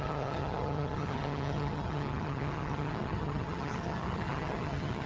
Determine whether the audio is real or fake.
fake